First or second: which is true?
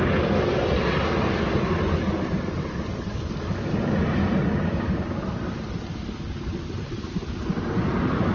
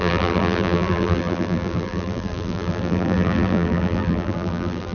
first